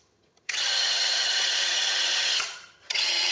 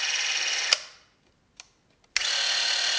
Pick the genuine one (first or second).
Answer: second